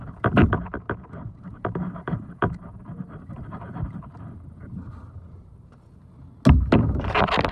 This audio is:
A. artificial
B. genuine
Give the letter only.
B